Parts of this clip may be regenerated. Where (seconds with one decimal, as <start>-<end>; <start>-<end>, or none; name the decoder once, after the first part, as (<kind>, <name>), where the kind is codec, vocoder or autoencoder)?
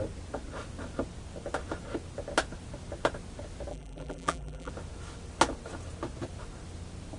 3.7-4.7 (vocoder, BigVGAN v2)